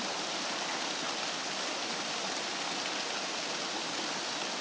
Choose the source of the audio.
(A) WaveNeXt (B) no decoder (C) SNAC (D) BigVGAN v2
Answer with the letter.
B